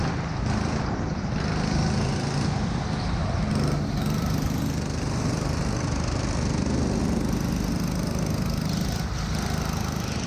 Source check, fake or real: real